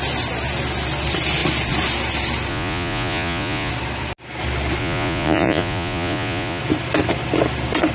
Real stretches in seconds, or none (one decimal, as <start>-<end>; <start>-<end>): 0.0-2.5; 3.7-4.8; 6.6-7.9